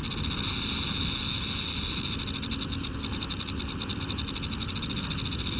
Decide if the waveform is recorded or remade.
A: recorded